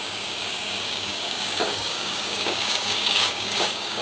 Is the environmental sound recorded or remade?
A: remade